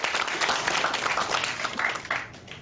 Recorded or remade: recorded